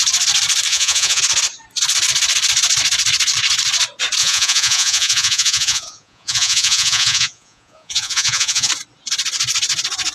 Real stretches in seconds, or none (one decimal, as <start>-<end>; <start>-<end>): 0.0-0.7; 1.2-4.2; 8.7-10.1